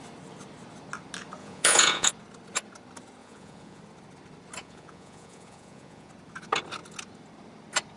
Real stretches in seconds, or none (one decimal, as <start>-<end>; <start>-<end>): 0.0-1.4; 2.1-3.2; 3.8-4.6; 6.1-8.0